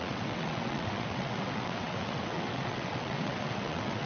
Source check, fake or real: fake